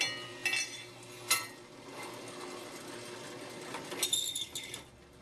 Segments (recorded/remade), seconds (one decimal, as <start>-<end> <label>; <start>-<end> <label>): 0.0-5.2 recorded